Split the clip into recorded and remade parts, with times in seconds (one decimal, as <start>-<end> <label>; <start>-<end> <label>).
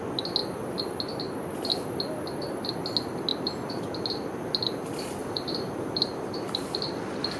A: 0.0-3.3 recorded; 3.3-3.8 remade; 3.8-5.2 recorded; 5.2-7.0 remade; 7.0-7.4 recorded